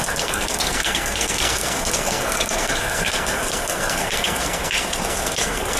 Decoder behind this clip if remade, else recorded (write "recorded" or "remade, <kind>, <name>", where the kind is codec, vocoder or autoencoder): remade, codec, SNAC